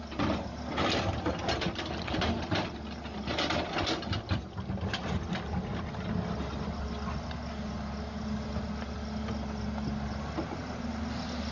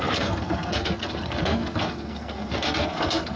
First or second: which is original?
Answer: first